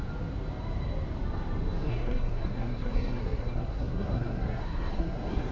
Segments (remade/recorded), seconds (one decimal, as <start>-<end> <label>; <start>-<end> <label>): 0.0-1.9 recorded; 1.9-5.5 remade